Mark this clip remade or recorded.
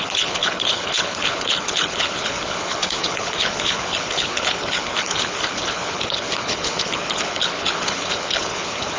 remade